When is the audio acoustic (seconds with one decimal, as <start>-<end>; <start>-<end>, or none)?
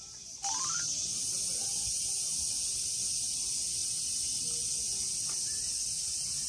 0.0-6.5